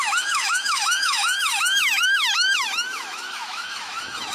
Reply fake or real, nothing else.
fake